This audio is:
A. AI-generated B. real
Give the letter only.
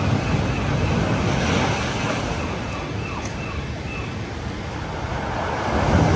B